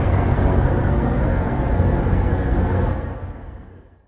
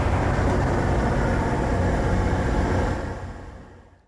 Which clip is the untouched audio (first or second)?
second